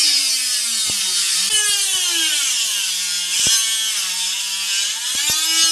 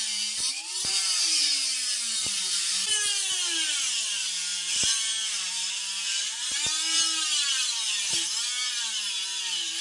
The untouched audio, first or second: first